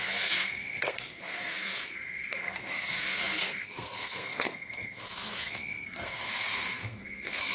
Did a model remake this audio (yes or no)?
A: yes